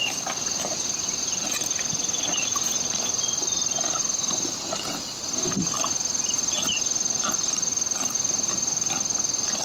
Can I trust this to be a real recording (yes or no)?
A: yes